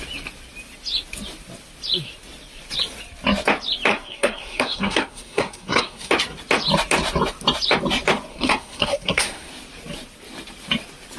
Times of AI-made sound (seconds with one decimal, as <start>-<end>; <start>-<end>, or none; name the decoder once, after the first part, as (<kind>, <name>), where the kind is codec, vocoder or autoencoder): 3.9-6.1 (codec, SNAC); 8.3-9.5